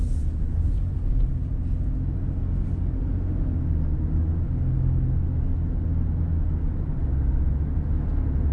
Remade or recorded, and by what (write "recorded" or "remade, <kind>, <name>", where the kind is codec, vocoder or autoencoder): recorded